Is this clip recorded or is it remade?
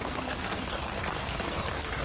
remade